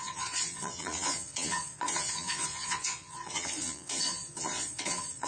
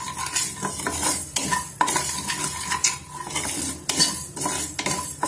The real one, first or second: second